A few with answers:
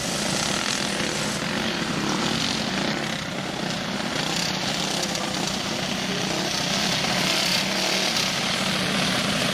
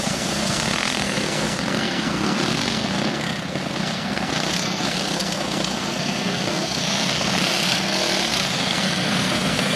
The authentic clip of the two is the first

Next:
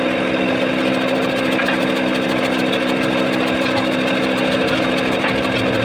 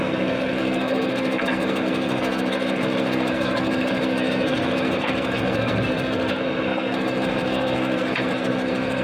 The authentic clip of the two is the first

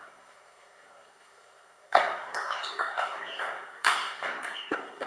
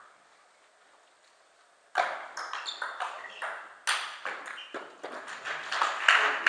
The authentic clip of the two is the second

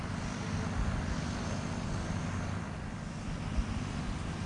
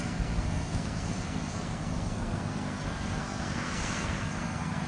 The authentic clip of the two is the first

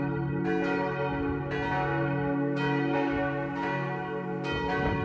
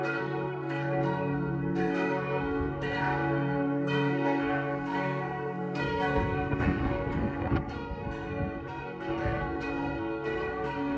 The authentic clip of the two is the first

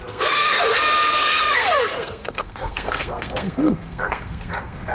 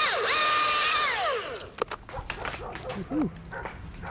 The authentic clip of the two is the second